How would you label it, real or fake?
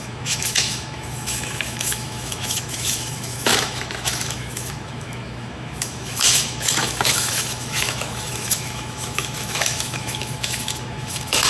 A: fake